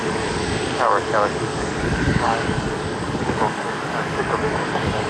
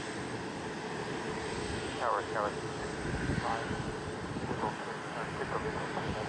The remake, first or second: first